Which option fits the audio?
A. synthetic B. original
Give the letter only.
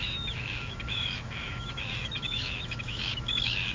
A